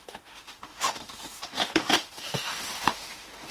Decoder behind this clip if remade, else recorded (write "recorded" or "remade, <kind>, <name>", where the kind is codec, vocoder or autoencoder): remade, autoencoder, DAC-VAE